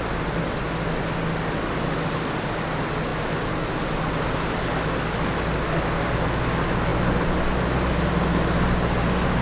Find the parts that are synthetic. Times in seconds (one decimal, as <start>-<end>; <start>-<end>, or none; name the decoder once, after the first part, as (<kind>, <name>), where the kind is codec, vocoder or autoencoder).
none